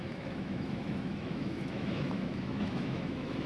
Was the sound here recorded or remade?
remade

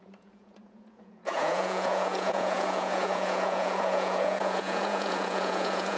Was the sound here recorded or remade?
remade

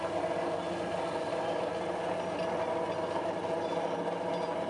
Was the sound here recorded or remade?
recorded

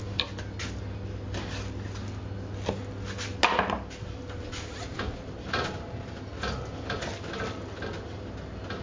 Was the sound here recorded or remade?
recorded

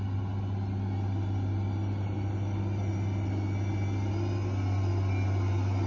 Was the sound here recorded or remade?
recorded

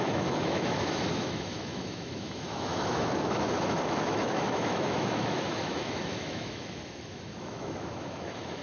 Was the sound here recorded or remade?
remade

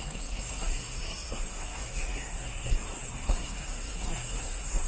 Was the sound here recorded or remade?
remade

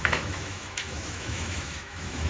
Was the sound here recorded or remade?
remade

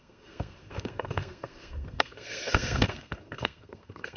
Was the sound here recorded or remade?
remade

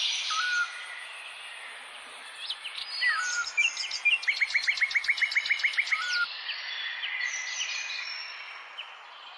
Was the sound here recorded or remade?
recorded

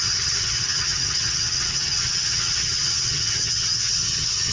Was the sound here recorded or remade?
remade